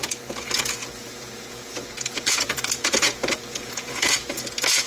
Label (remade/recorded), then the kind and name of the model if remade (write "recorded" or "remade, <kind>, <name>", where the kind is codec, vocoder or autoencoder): remade, vocoder, Vocos